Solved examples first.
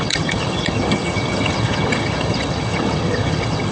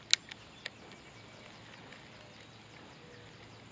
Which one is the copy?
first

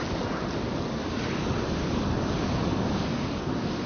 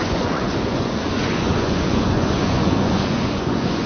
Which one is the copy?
second